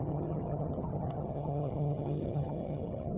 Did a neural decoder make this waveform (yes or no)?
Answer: yes